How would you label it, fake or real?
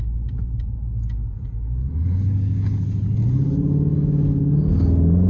real